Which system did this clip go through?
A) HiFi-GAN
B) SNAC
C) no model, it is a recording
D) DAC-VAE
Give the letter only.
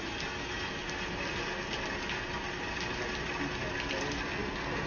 C